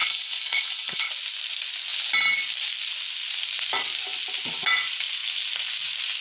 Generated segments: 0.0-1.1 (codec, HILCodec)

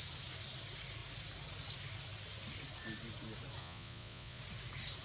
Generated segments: 3.6-4.4 (vocoder, Vocos)